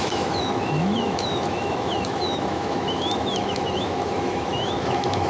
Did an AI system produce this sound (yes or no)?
yes